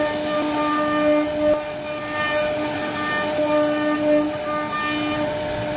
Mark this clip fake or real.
real